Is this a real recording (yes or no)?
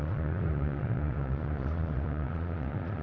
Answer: no